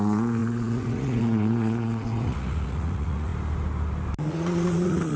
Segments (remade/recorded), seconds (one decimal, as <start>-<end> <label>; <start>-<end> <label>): 0.0-3.3 remade; 3.3-4.3 recorded; 4.3-5.2 remade